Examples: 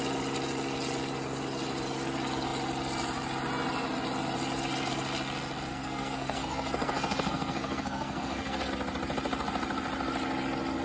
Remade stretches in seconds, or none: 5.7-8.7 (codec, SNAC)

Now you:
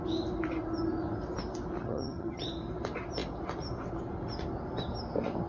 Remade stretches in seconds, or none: 1.8-2.4 (vocoder, HiFi-GAN)

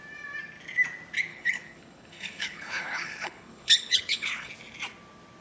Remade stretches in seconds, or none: 1.3-4.5 (codec, HILCodec)